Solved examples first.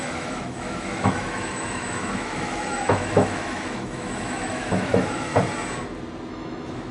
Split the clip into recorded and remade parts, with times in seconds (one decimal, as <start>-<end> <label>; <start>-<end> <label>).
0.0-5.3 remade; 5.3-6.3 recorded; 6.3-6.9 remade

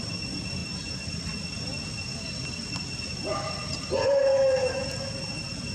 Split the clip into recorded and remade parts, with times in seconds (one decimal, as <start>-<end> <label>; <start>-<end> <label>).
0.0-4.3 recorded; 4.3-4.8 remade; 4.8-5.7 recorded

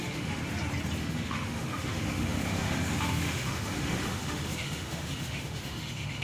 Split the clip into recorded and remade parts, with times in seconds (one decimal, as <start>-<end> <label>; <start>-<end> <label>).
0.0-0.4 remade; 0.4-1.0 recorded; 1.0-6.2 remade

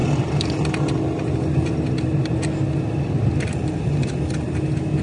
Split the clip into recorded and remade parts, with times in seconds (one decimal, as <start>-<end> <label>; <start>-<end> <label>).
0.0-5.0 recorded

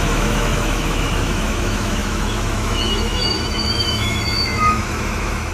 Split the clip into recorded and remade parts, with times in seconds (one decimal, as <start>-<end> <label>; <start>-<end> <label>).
0.0-5.5 remade